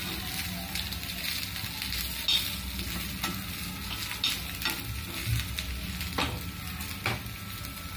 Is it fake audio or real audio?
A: real